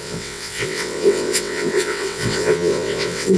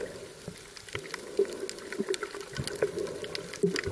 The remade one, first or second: first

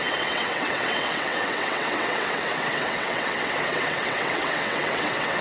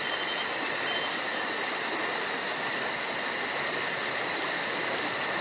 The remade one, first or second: first